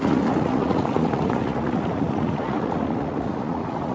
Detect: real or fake fake